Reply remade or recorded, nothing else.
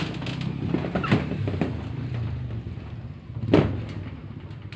recorded